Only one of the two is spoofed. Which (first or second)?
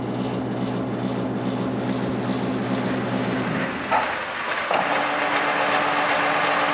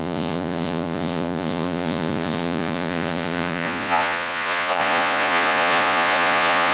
second